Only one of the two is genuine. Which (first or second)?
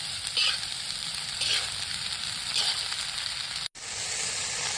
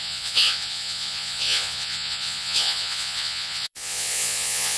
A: first